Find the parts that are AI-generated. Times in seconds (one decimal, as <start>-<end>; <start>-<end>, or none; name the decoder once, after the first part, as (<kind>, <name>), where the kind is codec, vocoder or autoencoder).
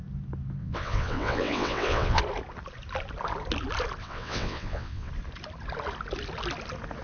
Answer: 0.6-2.2 (vocoder, WaveNeXt); 4.0-5.1